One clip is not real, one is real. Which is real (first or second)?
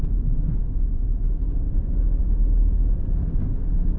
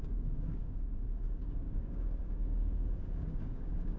first